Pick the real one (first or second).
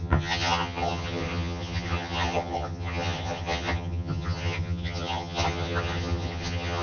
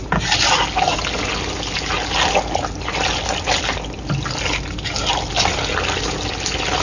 second